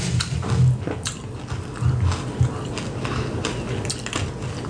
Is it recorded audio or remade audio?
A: recorded